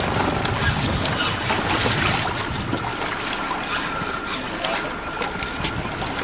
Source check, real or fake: real